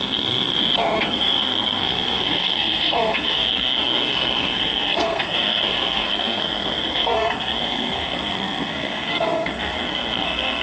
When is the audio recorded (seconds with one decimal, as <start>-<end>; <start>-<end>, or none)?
0.6-1.1